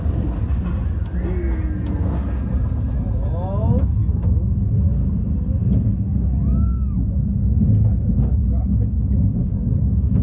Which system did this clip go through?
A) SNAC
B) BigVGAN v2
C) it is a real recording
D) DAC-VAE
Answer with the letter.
C